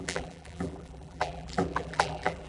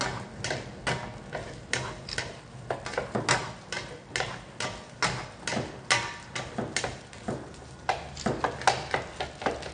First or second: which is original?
second